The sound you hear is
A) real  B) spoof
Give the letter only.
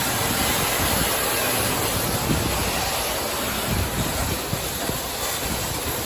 A